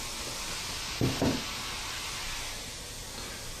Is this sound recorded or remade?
recorded